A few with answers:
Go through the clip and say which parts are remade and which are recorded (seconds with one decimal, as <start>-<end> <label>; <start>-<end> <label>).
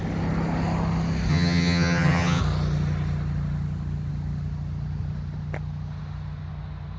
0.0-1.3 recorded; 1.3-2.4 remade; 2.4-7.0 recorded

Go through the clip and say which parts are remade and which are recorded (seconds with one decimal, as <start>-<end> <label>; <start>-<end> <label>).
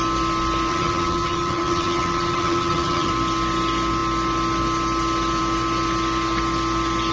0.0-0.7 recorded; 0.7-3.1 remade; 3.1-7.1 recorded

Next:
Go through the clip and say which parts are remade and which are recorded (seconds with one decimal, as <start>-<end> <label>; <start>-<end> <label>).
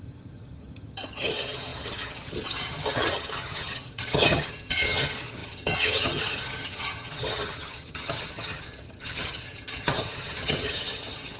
0.0-11.4 remade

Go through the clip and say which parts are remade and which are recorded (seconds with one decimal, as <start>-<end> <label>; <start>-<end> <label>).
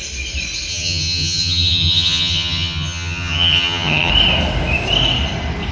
0.0-0.7 recorded; 0.7-4.1 remade; 4.1-5.7 recorded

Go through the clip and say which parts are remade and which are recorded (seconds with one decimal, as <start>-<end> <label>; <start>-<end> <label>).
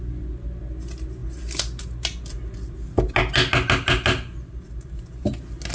0.0-5.7 recorded